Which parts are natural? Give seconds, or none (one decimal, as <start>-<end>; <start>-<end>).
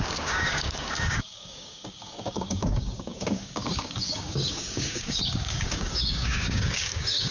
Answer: none